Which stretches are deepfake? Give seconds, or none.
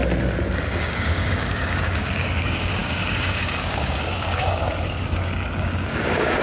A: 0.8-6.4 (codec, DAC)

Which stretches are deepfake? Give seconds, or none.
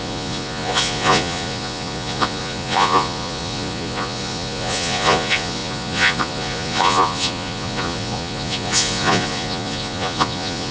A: 0.0-10.7 (vocoder, Vocos)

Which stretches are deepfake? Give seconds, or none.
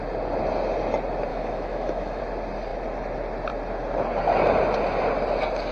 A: 1.3-2.2 (autoencoder, DAC-VAE)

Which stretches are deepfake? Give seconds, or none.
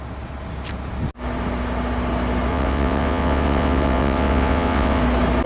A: 2.5-5.0 (vocoder, WaveNeXt)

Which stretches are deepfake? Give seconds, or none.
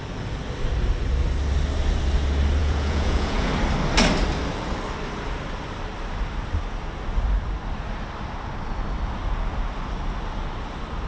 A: 2.6-3.5 (vocoder, Vocos)